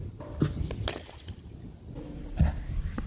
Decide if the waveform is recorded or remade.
recorded